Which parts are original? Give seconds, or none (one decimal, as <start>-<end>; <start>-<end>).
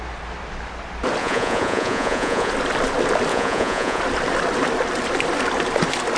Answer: 0.0-1.2; 2.5-3.3; 4.0-6.2